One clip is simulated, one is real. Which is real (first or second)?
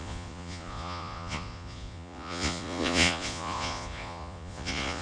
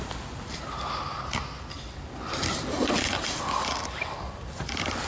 second